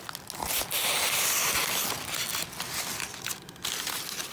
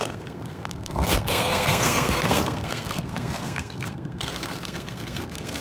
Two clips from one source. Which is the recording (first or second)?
first